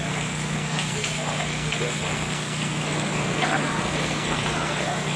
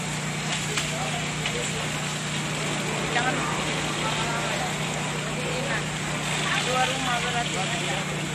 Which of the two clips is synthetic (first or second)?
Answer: first